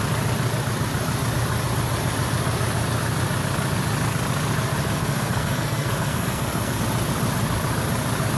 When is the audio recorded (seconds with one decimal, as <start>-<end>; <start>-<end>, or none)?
0.0-5.0; 6.8-8.4